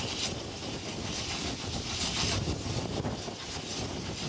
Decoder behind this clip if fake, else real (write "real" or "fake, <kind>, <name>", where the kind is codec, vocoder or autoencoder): real